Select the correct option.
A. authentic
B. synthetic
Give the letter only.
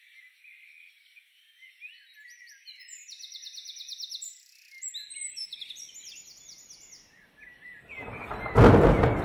A